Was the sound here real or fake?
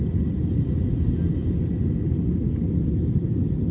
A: real